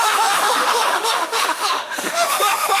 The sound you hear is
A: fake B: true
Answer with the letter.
A